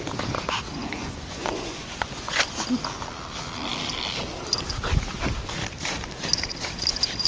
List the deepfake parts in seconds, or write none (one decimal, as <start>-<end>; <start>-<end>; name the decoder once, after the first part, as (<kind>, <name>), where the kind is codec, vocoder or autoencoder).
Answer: 0.8-2.4 (vocoder, Vocos)